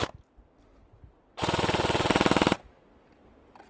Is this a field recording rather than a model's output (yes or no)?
yes